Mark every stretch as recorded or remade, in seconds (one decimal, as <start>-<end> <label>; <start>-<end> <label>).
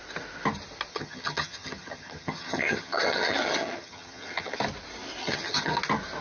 0.0-0.9 recorded; 0.9-4.6 remade; 4.6-5.2 recorded; 5.2-5.8 remade; 5.8-6.2 recorded